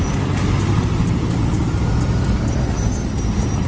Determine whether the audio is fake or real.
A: real